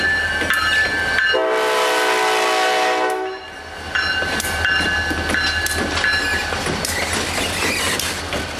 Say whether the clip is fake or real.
real